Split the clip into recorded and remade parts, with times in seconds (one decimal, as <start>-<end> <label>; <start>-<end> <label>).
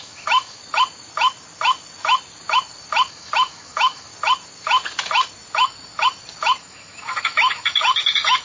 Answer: 0.0-0.6 remade; 0.6-3.1 recorded; 3.1-4.1 remade; 4.1-6.6 recorded; 6.6-8.4 remade